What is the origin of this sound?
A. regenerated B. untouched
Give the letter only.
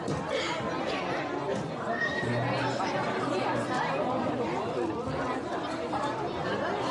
B